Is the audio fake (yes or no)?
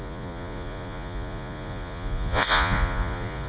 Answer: yes